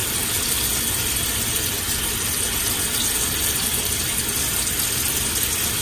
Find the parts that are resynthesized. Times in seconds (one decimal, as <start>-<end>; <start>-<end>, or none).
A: none